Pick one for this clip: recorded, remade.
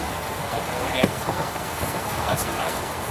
remade